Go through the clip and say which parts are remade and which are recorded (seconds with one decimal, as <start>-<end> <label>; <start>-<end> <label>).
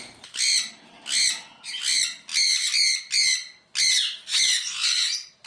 0.0-2.3 recorded; 2.3-3.0 remade; 3.0-5.5 recorded